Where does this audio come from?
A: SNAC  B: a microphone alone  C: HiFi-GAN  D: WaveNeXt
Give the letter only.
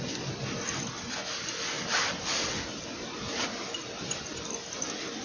B